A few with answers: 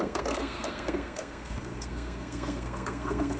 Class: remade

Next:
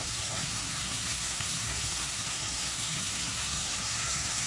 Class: remade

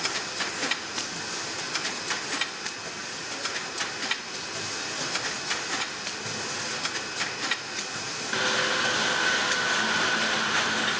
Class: recorded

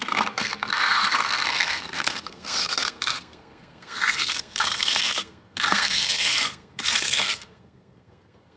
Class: remade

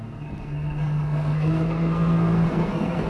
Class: remade